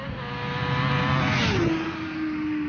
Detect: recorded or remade recorded